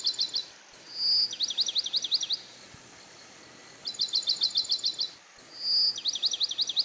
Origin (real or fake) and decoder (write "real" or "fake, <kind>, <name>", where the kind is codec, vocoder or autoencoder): real